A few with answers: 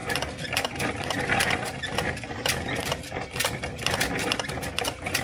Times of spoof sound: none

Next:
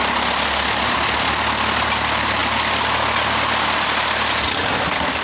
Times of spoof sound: none

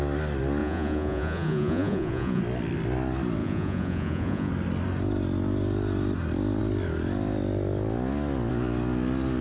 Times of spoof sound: 0.6-2.4 (vocoder, Vocos); 3.4-4.5